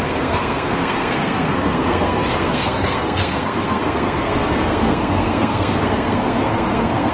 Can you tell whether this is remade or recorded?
remade